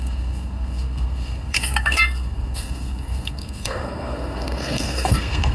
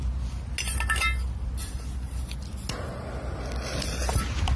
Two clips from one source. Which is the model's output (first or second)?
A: first